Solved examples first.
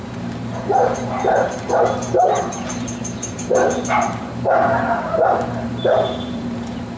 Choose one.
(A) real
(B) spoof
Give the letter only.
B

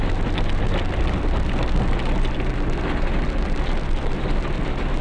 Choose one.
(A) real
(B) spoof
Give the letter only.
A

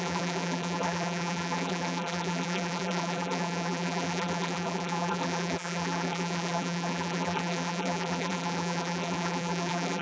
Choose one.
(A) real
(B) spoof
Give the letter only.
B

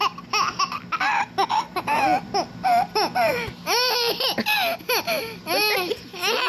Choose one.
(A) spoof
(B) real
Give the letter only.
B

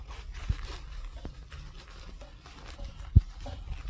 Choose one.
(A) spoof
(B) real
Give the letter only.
B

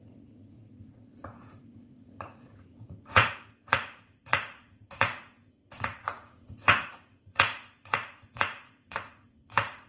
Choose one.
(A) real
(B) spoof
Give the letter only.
B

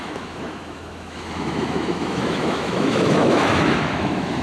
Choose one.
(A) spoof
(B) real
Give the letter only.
A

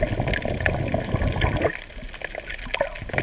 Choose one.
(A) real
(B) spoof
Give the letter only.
A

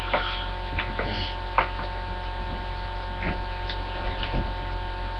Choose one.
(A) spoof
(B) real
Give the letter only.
B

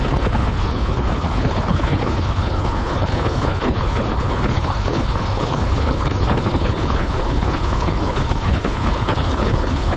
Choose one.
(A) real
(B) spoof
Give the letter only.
B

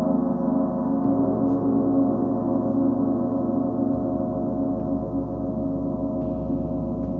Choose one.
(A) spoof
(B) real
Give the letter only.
B